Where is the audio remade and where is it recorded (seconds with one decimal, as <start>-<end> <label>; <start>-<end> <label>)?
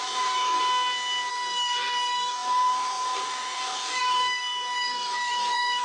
0.0-0.6 remade; 0.6-1.3 recorded; 1.3-5.8 remade